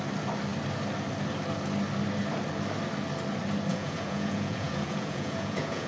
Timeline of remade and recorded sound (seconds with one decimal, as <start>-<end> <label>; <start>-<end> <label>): 0.0-3.7 recorded; 3.7-5.9 remade